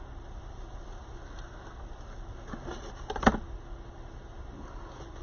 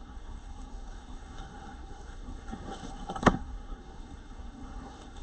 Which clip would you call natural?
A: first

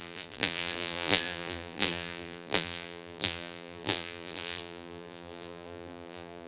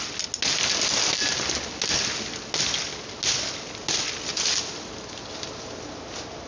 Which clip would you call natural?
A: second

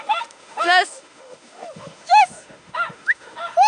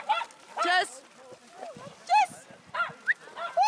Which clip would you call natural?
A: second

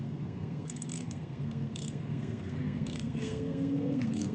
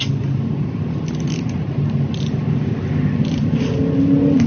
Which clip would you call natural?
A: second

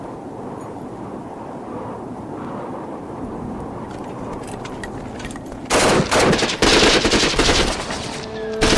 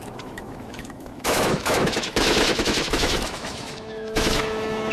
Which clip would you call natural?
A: first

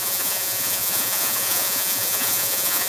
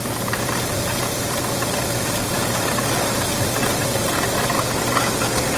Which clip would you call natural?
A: second